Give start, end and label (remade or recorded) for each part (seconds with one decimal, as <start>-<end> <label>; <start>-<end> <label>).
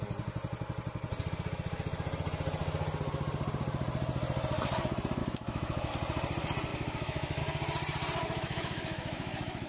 0.0-5.2 recorded; 5.2-5.9 remade; 5.9-6.7 recorded; 6.7-7.4 remade; 7.4-8.2 recorded; 8.2-9.7 remade